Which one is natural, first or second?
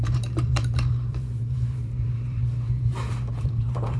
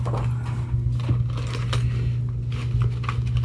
second